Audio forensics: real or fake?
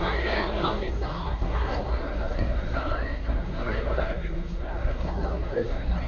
fake